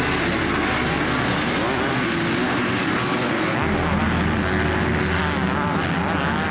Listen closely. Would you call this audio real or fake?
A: real